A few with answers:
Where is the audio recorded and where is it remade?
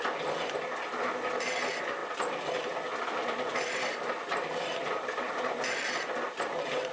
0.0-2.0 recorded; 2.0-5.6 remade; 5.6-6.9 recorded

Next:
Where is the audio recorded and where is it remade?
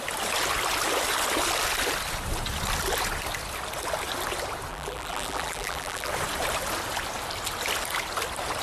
0.0-4.7 recorded; 4.7-6.1 remade; 6.1-8.6 recorded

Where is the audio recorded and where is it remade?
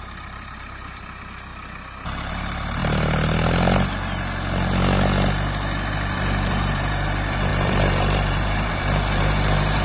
0.0-1.5 remade; 1.5-2.3 recorded; 2.3-2.8 remade; 2.8-5.9 recorded; 5.9-9.8 remade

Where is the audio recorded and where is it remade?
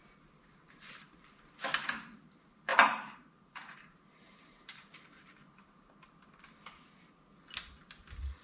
0.0-2.7 recorded; 2.7-5.9 remade; 5.9-8.4 recorded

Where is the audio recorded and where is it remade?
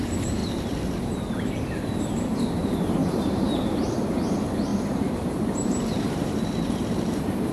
0.0-7.5 remade